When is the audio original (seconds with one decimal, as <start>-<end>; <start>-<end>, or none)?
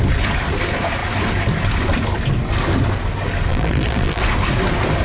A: 0.0-3.5; 4.2-5.0